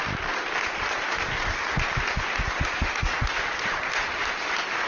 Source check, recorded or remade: recorded